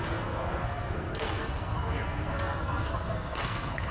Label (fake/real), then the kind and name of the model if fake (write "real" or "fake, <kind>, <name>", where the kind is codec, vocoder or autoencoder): fake, codec, SNAC